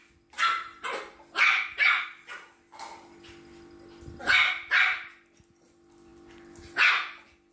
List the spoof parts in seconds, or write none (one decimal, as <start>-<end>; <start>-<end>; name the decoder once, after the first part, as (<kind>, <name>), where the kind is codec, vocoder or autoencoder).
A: none